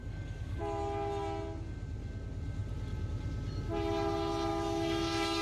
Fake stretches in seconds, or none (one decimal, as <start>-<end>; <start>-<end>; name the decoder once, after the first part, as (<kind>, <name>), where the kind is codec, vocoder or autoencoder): 0.0-0.6 (codec, DAC); 4.5-5.4

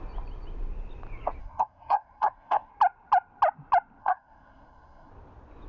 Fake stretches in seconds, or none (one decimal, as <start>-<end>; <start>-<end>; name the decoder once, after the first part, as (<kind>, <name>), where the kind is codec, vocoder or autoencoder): 1.4-2.7 (codec, SNAC); 4.0-5.1